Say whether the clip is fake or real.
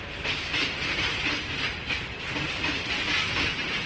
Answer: fake